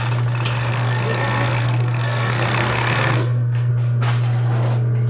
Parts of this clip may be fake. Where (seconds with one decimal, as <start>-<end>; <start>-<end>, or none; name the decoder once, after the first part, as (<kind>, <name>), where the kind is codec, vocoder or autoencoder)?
0.7-3.7 (codec, SNAC)